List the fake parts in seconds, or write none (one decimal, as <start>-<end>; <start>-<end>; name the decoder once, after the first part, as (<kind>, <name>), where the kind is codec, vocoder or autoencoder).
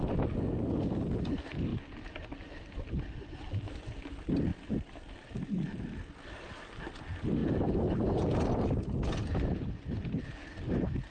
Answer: 4.5-5.3 (vocoder, BigVGAN v2)